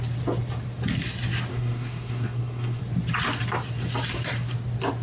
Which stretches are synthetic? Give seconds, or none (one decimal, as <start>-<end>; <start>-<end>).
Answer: 1.5-2.8